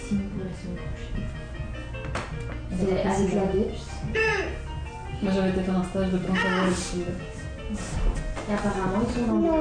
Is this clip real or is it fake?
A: real